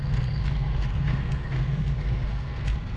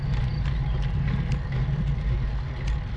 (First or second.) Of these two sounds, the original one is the second